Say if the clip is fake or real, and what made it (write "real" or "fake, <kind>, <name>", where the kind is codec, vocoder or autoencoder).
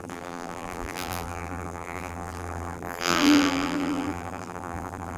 fake, vocoder, BigVGAN v2